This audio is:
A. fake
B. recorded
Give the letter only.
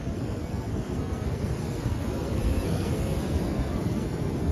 A